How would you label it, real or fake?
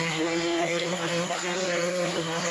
fake